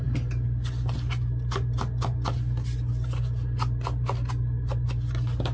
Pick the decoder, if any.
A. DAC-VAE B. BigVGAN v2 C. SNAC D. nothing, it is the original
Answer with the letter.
D